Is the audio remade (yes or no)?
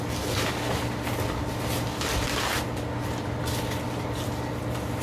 no